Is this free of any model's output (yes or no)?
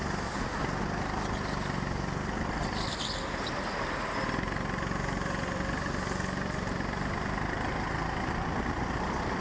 yes